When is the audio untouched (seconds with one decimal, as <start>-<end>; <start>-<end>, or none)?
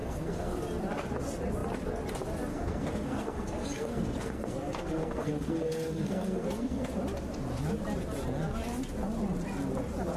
0.6-2.5; 7.0-10.2